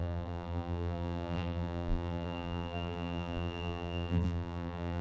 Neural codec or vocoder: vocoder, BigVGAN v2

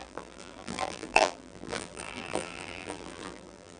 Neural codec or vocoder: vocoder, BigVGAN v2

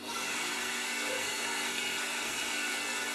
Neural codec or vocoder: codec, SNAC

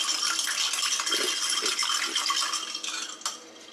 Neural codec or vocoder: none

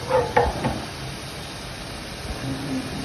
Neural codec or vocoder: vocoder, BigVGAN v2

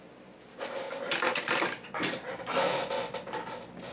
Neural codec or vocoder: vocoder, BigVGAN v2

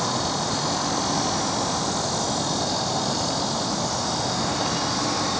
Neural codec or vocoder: none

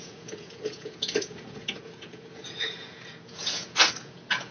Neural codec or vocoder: vocoder, Vocos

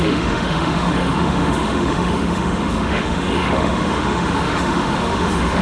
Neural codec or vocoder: autoencoder, DAC-VAE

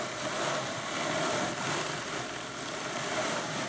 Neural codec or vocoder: vocoder, BigVGAN v2